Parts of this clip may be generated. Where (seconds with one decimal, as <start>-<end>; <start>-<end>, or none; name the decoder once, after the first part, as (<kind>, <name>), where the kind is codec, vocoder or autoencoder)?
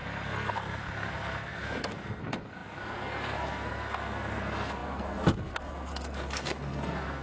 0.0-7.2 (codec, SNAC)